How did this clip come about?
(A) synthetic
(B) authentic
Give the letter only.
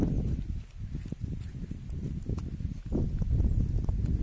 B